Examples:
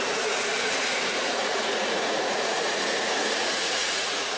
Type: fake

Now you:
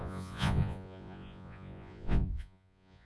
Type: fake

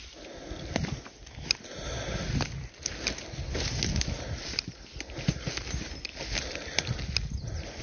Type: real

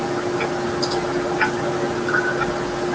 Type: real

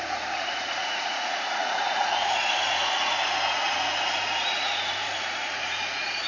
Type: fake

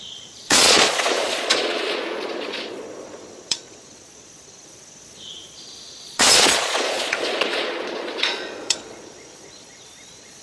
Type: fake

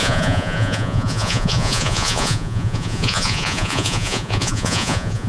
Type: fake